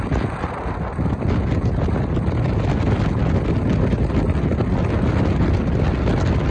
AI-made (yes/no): no